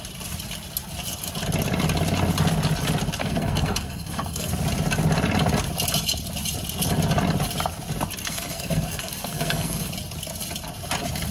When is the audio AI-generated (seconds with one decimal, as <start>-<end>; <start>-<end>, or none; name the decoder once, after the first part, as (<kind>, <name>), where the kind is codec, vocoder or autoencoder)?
3.2-4.5 (codec, SNAC); 8.2-9.9